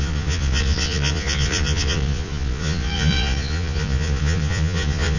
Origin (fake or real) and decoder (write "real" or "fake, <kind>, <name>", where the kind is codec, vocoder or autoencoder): fake, vocoder, Vocos